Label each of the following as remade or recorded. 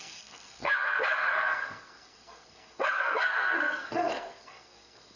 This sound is remade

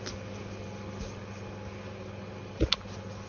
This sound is recorded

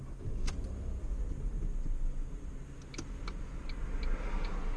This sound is recorded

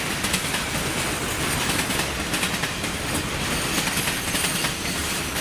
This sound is recorded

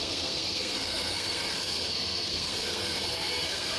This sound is remade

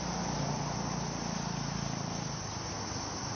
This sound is recorded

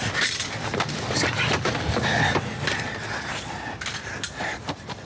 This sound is recorded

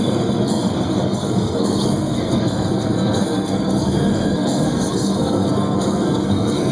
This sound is remade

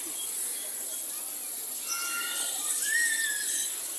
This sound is recorded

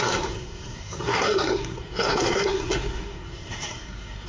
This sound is remade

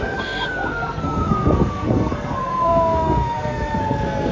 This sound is remade